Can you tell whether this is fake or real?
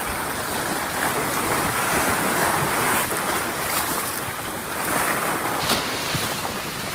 real